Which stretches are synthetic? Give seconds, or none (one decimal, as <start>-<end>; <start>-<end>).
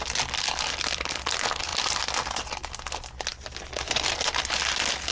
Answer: none